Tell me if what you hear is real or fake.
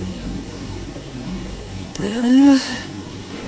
fake